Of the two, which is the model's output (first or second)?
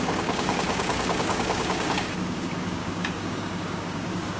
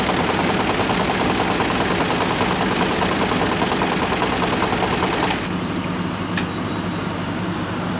first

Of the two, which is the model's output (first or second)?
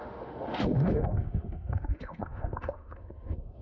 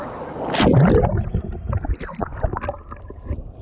first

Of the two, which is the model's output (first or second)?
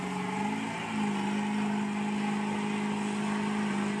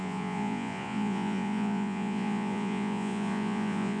second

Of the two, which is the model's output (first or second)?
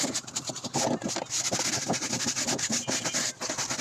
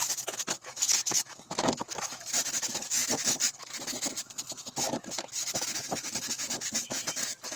second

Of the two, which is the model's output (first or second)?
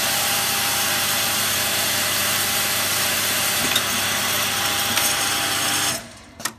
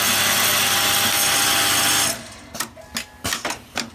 first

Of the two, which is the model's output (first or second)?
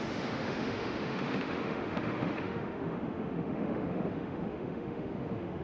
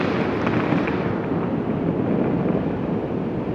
first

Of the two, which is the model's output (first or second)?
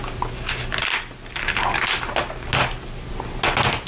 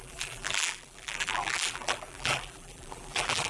second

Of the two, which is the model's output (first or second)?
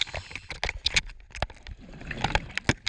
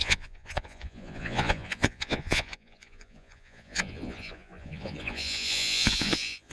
second